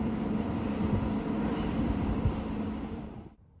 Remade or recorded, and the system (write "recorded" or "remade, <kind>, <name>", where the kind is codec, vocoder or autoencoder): remade, vocoder, BigVGAN v2